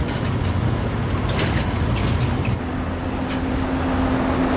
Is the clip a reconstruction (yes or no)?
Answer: no